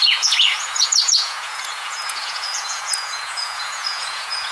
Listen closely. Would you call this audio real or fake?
fake